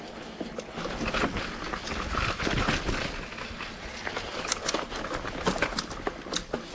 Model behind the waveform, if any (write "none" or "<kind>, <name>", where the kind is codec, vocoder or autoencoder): none